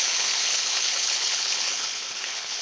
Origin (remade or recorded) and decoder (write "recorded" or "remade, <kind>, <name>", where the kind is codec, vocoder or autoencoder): remade, codec, HILCodec